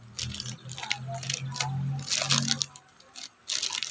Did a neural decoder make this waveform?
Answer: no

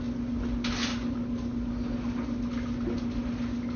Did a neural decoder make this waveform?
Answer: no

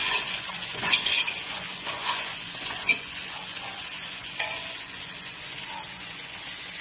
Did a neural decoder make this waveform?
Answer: yes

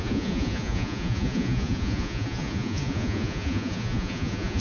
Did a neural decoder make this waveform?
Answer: yes